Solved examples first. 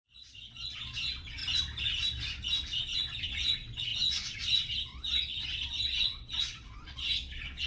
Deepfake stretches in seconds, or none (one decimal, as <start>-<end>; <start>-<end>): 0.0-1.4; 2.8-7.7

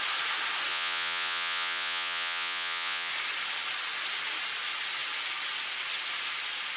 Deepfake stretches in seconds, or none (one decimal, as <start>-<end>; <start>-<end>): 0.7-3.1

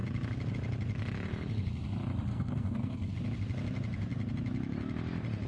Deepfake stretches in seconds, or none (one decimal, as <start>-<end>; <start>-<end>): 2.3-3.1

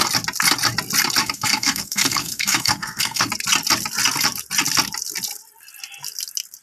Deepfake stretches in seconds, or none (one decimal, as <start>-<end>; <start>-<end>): 1.2-3.3

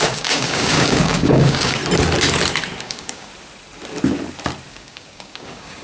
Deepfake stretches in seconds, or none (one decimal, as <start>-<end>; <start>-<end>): 0.0-1.8; 2.8-3.3; 4.7-5.8